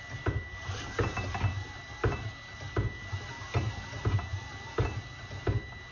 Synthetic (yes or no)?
no